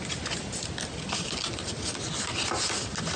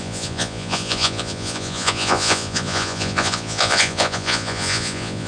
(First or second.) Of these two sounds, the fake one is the second